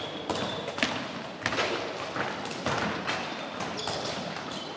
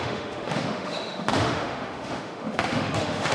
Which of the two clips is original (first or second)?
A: first